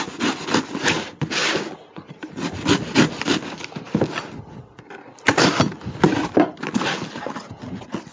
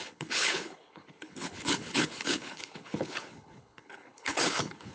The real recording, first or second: first